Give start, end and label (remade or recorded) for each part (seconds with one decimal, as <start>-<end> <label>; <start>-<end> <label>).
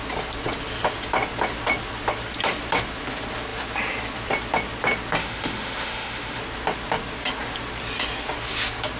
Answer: 0.0-5.2 recorded; 5.2-6.4 remade; 6.4-9.0 recorded